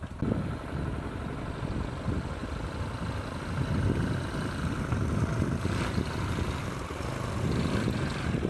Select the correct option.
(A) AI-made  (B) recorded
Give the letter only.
B